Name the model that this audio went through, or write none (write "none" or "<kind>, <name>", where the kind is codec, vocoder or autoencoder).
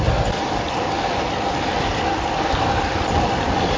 none